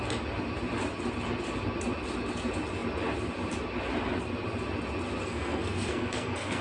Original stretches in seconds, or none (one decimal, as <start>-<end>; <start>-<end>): 0.0-5.2